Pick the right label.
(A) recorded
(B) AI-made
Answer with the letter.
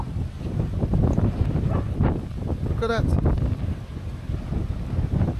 A